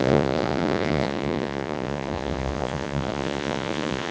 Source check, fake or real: fake